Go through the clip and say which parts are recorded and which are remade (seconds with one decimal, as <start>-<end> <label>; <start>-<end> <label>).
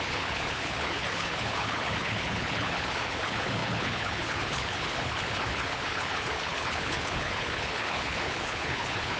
0.0-9.2 remade